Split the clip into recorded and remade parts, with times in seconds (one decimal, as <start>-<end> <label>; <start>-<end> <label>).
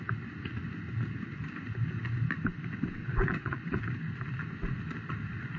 0.0-3.0 recorded; 3.0-3.8 remade; 3.8-5.6 recorded